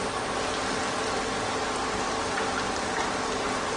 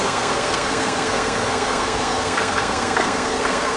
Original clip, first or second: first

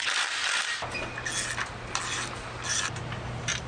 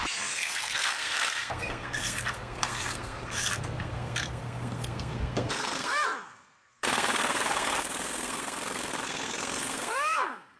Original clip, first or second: first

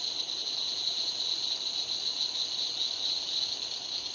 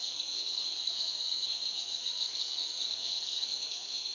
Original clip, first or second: first